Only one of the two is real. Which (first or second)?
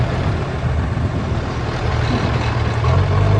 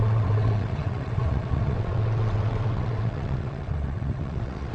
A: first